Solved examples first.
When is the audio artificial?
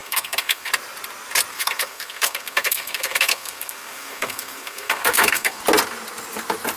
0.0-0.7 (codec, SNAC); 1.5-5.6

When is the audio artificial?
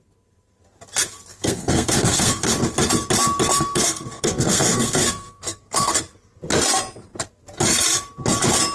1.3-2.5 (codec, SNAC); 3.5-5.9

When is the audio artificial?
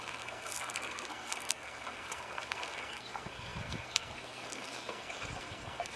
0.0-6.0 (codec, SNAC)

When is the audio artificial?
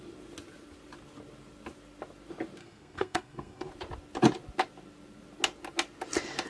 2.6-3.7 (codec, SNAC)